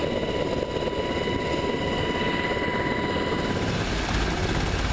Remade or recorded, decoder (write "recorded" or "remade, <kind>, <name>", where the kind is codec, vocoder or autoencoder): recorded